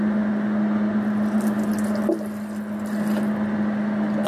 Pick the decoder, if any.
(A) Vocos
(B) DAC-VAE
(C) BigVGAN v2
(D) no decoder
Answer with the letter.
D